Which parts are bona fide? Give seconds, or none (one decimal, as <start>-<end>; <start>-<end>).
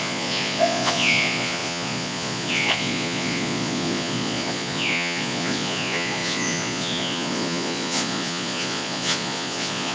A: none